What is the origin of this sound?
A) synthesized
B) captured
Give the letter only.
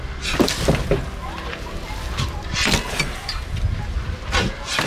B